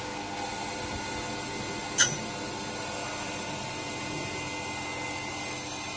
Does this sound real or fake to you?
real